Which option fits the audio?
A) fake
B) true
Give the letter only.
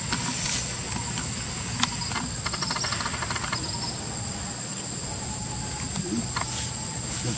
B